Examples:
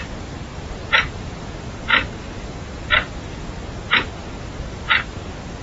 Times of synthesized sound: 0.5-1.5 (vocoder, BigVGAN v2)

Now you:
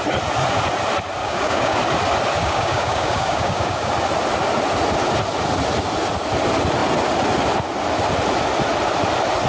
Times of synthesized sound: 1.2-1.8 (codec, DAC); 2.4-3.9

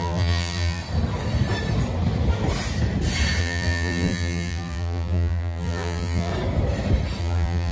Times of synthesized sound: 0.0-0.8 (vocoder, BigVGAN v2); 3.4-6.3; 7.2-7.7

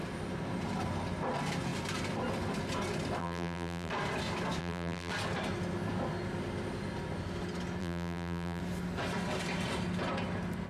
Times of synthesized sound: 3.2-3.9 (vocoder, BigVGAN v2); 4.6-5.1; 7.8-8.6

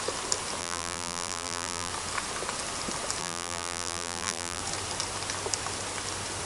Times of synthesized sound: 0.6-1.9 (vocoder, BigVGAN v2); 3.2-4.6

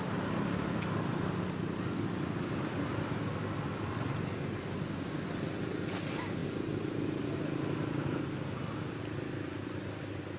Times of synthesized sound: none

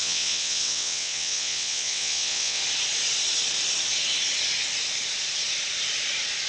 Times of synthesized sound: 0.0-2.6 (vocoder, WaveNeXt)